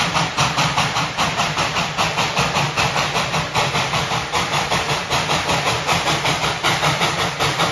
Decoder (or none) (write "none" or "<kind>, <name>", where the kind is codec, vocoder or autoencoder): vocoder, BigVGAN v2